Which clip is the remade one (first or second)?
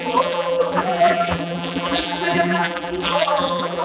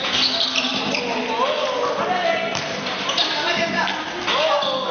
first